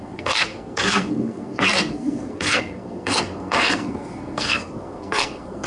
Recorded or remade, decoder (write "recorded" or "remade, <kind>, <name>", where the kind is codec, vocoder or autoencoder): remade, codec, SNAC